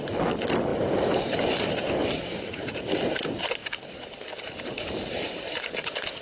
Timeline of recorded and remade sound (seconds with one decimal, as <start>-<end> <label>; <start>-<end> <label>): 0.0-0.7 recorded; 0.7-1.4 remade; 1.4-3.6 recorded; 3.6-5.6 remade; 5.6-6.2 recorded